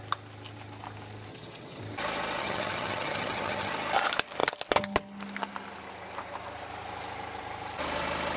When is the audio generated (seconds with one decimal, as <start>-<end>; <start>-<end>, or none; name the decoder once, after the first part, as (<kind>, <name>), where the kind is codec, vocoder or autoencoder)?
1.3-1.8 (vocoder, HiFi-GAN); 2.4-3.7